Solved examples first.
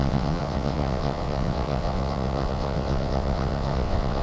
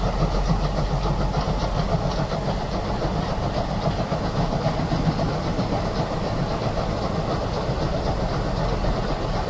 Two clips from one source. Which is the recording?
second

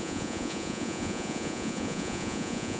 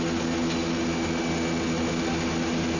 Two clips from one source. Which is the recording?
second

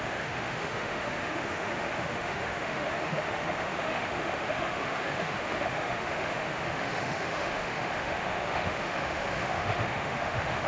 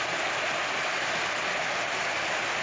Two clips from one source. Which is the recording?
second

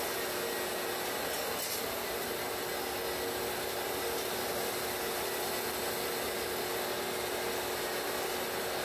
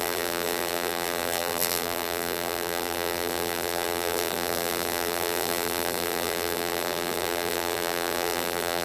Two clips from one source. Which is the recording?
first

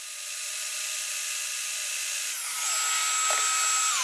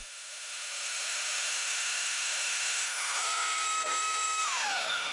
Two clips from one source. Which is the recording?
first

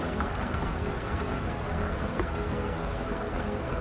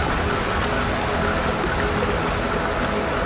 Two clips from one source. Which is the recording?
second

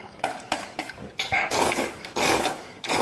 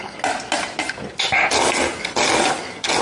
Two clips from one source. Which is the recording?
second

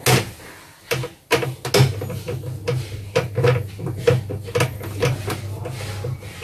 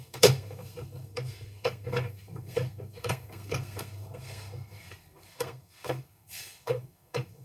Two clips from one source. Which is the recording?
first